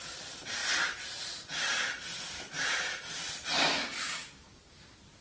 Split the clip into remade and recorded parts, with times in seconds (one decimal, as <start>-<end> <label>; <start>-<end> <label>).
0.0-3.7 recorded; 3.7-4.6 remade; 4.6-5.2 recorded